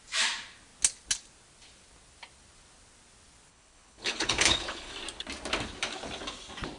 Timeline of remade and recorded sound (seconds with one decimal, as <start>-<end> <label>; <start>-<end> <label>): 0.0-3.5 recorded; 3.5-4.9 remade; 4.9-6.8 recorded